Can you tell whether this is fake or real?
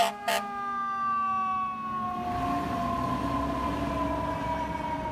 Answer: real